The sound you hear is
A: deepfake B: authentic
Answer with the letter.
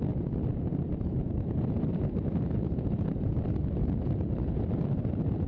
B